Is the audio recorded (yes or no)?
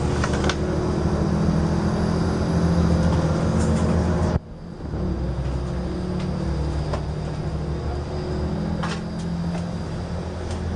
yes